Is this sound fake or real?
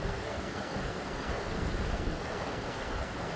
fake